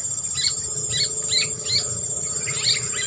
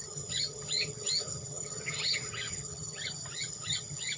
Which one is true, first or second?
first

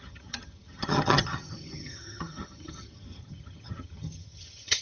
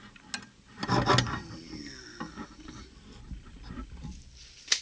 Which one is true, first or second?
second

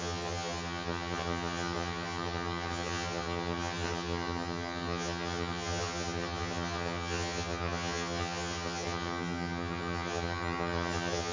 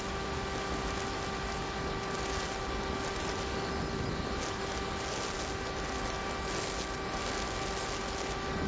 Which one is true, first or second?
second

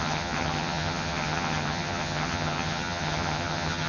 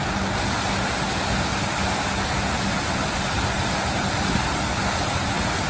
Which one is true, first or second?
second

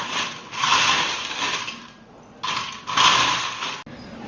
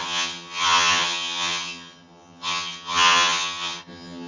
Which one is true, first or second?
first